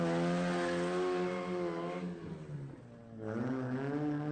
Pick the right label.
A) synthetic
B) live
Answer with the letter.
B